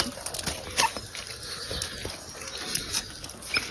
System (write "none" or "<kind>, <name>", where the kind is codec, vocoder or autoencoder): none